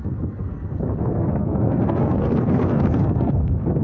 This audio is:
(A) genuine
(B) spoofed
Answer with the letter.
B